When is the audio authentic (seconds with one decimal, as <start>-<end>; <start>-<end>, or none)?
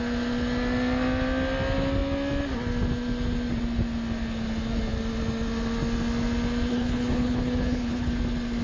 0.0-6.7; 8.1-8.6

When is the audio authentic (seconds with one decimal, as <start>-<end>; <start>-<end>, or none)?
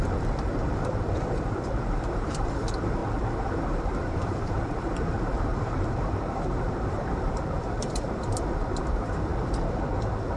9.3-10.4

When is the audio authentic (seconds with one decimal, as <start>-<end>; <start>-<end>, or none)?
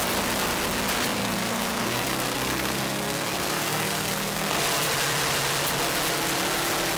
0.0-1.2; 4.6-7.0